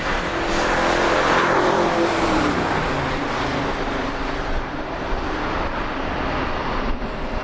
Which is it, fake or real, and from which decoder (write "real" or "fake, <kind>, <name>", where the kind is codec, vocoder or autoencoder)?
fake, vocoder, BigVGAN v2